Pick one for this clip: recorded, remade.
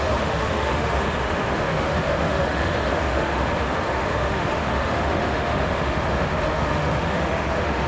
remade